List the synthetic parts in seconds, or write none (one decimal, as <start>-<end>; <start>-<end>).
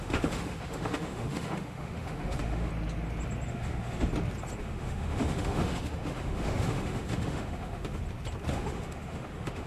0.0-2.7; 3.5-4.1; 4.6-8.0; 8.5-9.7